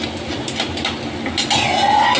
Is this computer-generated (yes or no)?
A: no